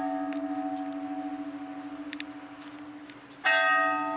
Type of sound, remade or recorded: recorded